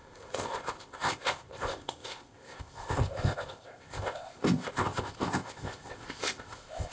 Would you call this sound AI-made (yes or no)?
yes